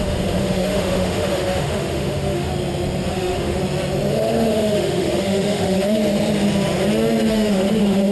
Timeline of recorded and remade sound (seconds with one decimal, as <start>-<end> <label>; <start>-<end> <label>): 0.0-2.5 remade; 2.5-3.1 recorded; 3.1-3.6 remade; 3.6-4.1 recorded; 4.1-6.0 remade; 6.0-7.3 recorded; 7.3-8.1 remade